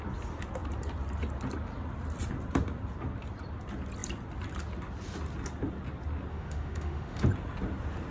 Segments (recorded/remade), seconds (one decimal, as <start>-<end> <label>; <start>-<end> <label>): 0.0-6.3 recorded; 6.3-7.2 remade; 7.2-8.1 recorded

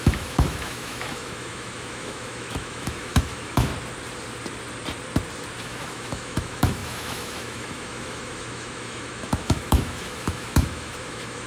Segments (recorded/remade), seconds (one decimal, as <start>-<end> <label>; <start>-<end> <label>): 0.0-3.7 remade; 3.7-5.6 recorded; 5.6-11.5 remade

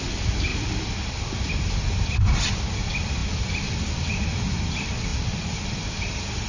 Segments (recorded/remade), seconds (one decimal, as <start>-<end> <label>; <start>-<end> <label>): 0.0-6.5 recorded

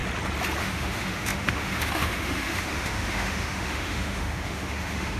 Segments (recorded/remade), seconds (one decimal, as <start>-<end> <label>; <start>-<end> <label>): 0.0-0.6 recorded; 0.6-5.2 remade